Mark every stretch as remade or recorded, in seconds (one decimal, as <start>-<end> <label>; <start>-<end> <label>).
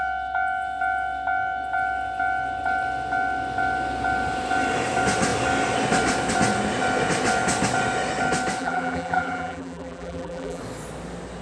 0.0-8.6 recorded; 8.6-10.6 remade; 10.6-11.4 recorded